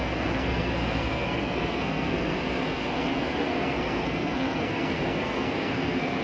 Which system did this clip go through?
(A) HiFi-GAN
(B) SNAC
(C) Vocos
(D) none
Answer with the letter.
B